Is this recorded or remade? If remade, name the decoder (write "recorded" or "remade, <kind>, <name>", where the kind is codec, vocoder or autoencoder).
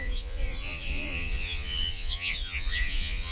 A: remade, vocoder, Vocos